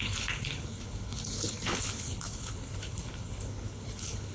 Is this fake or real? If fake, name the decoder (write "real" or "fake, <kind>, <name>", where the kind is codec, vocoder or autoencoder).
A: fake, codec, HILCodec